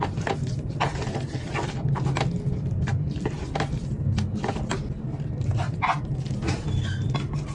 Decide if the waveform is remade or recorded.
recorded